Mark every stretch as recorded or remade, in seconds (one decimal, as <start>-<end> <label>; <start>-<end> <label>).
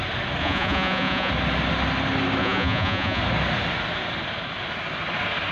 0.0-0.4 recorded; 0.4-1.3 remade; 1.3-2.4 recorded; 2.4-3.2 remade; 3.2-5.5 recorded